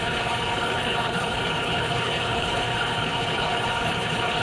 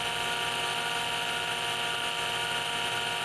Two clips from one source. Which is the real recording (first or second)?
second